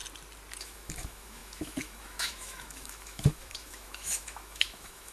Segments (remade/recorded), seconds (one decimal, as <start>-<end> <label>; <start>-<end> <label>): 0.0-0.6 recorded; 0.6-5.1 remade

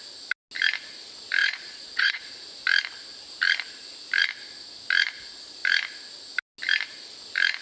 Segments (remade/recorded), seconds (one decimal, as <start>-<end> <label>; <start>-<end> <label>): 0.0-1.4 recorded; 1.4-2.2 remade; 2.2-7.6 recorded

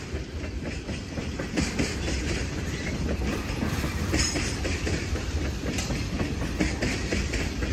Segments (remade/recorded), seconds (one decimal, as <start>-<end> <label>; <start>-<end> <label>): 0.0-7.7 remade

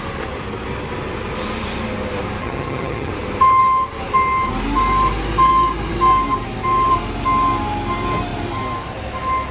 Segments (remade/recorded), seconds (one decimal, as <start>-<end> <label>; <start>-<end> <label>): 0.0-2.4 recorded; 2.4-3.1 remade; 3.1-9.5 recorded

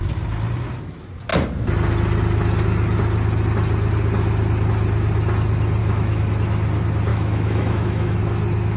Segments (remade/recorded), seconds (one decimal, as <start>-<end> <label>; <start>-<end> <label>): 0.0-5.8 recorded; 5.8-6.3 remade; 6.3-7.1 recorded; 7.1-8.2 remade; 8.2-8.8 recorded

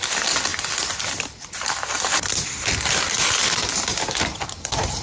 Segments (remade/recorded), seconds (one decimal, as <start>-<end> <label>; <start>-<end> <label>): 0.0-0.5 recorded; 0.5-2.2 remade; 2.2-5.0 recorded

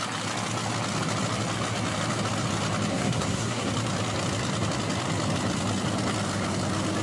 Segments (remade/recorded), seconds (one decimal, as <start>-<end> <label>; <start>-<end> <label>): 0.0-2.9 recorded; 2.9-3.7 remade; 3.7-7.0 recorded

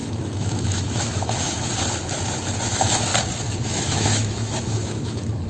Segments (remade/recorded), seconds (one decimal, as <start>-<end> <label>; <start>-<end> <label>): 0.0-1.7 remade; 1.7-2.7 recorded; 2.7-3.1 remade; 3.1-3.6 recorded; 3.6-5.5 remade